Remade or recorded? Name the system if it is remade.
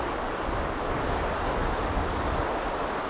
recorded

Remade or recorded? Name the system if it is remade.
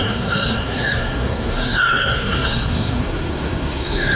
remade, codec, SNAC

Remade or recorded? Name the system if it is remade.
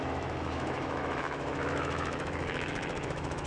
remade, autoencoder, DAC-VAE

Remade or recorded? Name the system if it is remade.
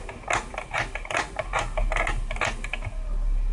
recorded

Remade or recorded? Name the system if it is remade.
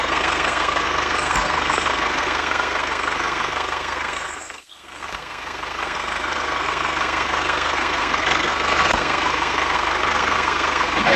remade, codec, SNAC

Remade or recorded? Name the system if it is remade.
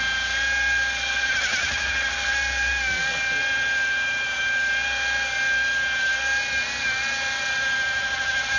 recorded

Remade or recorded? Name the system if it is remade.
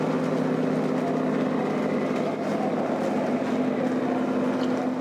recorded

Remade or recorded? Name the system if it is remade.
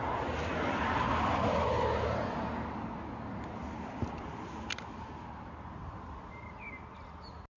recorded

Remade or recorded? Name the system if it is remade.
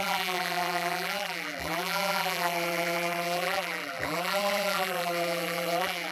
remade, vocoder, BigVGAN v2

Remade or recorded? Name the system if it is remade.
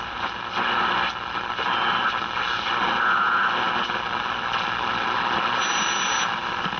recorded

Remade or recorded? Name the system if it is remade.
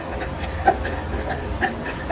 recorded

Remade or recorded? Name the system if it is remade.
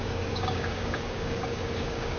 remade, codec, DAC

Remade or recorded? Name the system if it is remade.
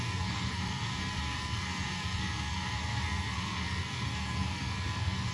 remade, codec, SNAC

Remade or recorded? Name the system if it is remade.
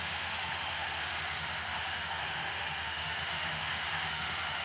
remade, autoencoder, DAC-VAE